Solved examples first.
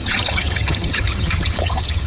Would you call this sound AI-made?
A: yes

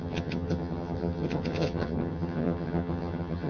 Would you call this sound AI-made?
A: yes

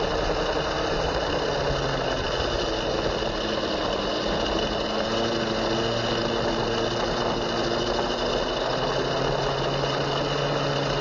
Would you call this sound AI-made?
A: no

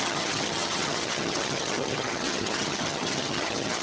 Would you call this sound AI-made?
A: yes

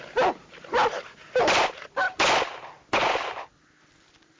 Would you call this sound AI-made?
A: no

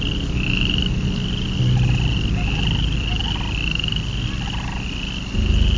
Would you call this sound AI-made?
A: no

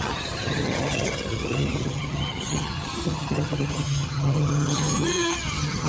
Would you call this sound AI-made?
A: yes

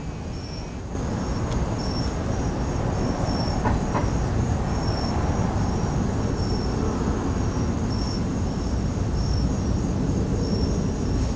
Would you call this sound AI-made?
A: no